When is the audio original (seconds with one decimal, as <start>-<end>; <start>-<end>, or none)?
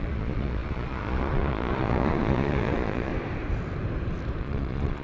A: 3.1-4.4